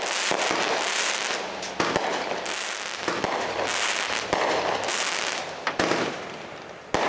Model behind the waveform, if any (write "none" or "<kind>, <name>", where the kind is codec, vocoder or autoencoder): none